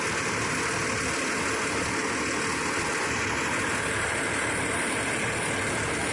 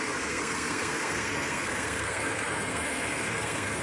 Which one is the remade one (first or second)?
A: second